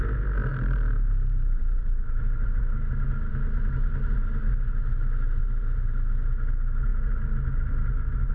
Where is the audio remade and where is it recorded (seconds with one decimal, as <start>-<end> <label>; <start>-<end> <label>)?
0.0-0.5 recorded; 0.5-2.2 remade; 2.2-5.4 recorded; 5.4-6.1 remade; 6.1-8.3 recorded